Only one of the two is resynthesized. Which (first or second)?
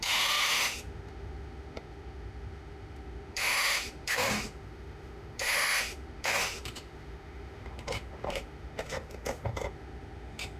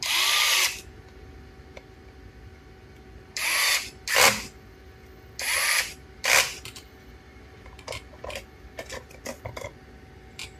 first